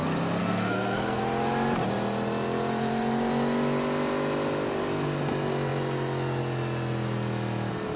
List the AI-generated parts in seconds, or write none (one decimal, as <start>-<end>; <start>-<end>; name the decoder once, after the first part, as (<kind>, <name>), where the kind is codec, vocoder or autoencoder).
0.4-1.2 (codec, SNAC)